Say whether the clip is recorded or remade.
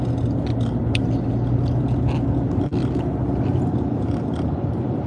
recorded